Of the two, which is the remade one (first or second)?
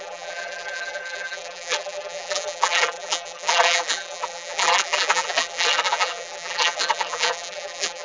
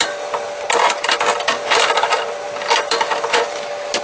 first